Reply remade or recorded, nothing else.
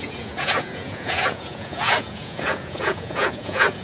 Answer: remade